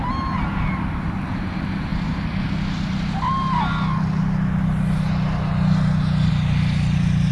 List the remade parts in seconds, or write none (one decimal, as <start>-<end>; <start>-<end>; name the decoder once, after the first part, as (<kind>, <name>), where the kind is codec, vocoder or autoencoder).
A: none